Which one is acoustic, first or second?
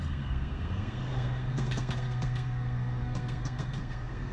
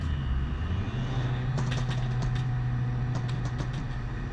second